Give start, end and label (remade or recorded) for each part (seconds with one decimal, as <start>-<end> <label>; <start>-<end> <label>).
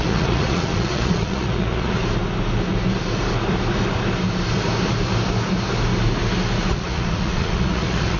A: 0.0-2.0 remade; 2.0-6.7 recorded; 6.7-8.2 remade